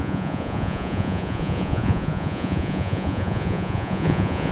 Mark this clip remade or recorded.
remade